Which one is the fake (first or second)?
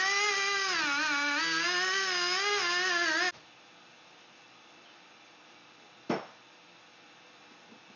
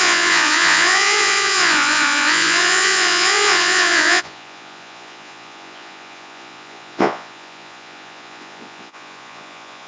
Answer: second